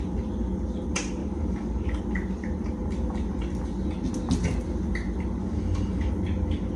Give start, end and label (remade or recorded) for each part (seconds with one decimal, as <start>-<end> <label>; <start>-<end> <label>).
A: 0.0-1.2 recorded; 1.2-2.0 remade; 2.0-5.4 recorded; 5.4-6.1 remade; 6.1-6.8 recorded

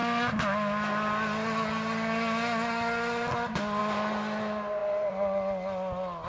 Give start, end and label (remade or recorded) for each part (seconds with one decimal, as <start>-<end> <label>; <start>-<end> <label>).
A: 0.0-6.3 recorded

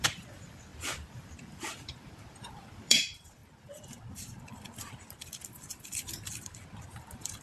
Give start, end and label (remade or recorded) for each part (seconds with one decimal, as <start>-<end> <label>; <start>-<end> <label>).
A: 0.0-7.4 remade

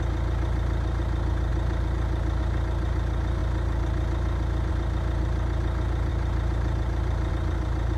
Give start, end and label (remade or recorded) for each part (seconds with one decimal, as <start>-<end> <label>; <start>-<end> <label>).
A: 0.0-1.5 recorded; 1.5-2.4 remade; 2.4-6.1 recorded; 6.1-7.3 remade; 7.3-8.0 recorded

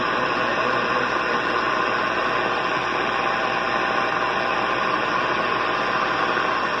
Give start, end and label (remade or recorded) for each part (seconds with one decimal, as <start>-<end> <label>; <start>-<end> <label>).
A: 0.0-6.8 recorded

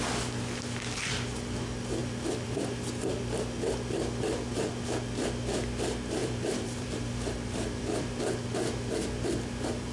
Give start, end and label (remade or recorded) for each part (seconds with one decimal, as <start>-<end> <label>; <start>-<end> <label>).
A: 0.0-2.0 recorded; 2.0-2.6 remade; 2.6-6.2 recorded; 6.2-8.2 remade; 8.2-9.9 recorded

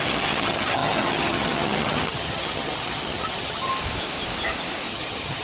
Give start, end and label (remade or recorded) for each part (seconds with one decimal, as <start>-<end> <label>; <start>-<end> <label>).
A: 0.0-3.7 remade; 3.7-4.9 recorded; 4.9-5.4 remade